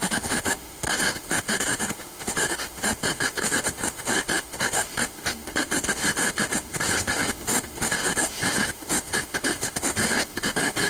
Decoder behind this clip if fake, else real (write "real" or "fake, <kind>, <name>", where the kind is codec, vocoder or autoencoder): fake, autoencoder, DAC-VAE